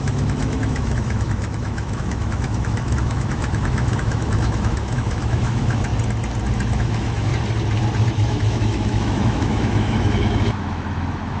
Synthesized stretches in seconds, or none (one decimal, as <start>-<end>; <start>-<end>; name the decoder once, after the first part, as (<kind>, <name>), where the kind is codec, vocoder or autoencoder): 0.0-5.9 (autoencoder, DAC-VAE); 6.7-7.3; 8.3-11.4